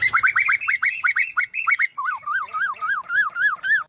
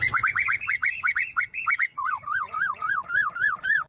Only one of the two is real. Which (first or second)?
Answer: first